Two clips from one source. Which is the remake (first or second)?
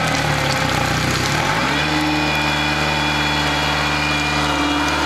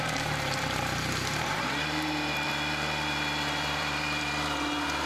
second